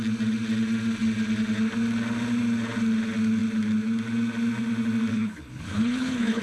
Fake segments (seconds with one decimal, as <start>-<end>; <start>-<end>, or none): 5.1-6.4